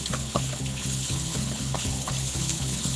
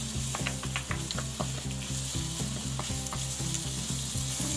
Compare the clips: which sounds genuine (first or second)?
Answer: second